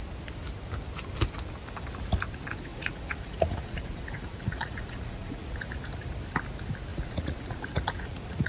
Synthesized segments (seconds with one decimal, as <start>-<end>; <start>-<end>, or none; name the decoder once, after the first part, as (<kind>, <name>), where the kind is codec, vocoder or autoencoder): 2.7-5.7 (vocoder, Vocos); 6.9-8.5